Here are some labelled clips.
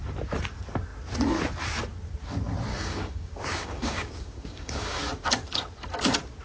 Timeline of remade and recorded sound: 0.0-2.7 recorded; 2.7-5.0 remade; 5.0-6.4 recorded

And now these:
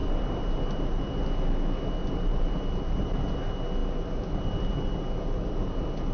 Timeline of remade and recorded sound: 0.0-1.0 remade; 1.0-2.0 recorded; 2.0-3.3 remade; 3.3-6.1 recorded